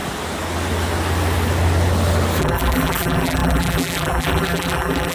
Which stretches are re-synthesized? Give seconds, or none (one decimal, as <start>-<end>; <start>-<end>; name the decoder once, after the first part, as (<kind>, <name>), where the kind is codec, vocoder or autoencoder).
2.4-5.1 (vocoder, BigVGAN v2)